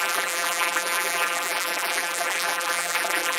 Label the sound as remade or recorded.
remade